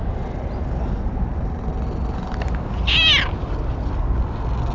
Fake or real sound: real